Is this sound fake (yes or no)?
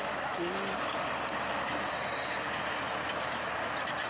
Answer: no